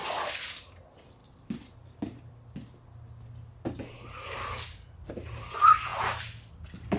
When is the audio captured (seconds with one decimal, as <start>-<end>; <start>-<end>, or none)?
0.0-7.0